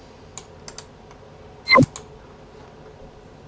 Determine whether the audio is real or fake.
real